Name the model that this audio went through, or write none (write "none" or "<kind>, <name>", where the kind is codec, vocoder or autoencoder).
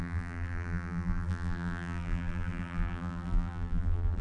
vocoder, BigVGAN v2